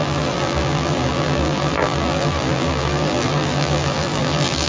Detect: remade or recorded remade